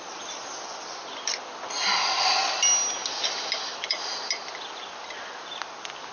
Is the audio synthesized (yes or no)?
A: no